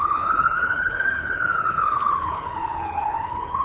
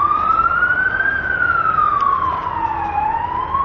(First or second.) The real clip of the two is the second